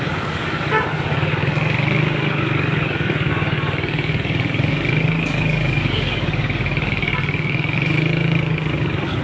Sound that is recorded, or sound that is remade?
remade